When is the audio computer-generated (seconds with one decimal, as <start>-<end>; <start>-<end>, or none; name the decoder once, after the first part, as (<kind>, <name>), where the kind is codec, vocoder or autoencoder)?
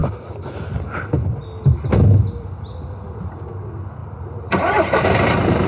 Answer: 4.0-5.7 (vocoder, BigVGAN v2)